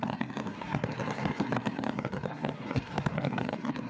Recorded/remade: remade